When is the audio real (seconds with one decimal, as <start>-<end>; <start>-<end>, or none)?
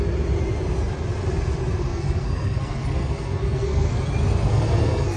0.0-1.9; 3.9-4.5